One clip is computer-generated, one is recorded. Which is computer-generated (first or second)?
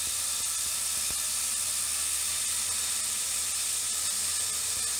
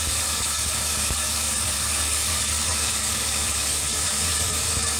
second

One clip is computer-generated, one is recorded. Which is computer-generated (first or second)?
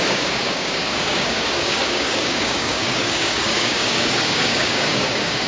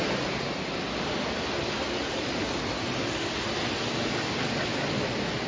first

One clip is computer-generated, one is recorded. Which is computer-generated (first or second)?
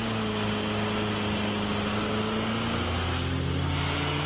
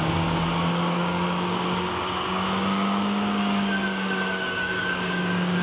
second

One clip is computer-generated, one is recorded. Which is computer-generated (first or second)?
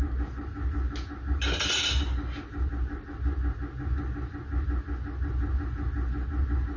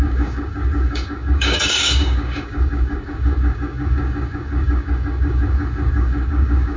second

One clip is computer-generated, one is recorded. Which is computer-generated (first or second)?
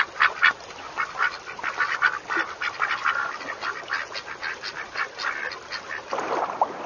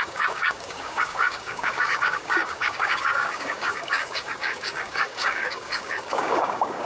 second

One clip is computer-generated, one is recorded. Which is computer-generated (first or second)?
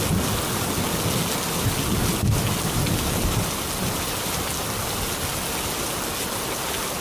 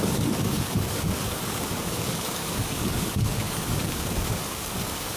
second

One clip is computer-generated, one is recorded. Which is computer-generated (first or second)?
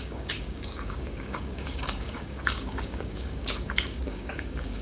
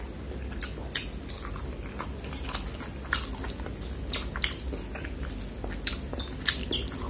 first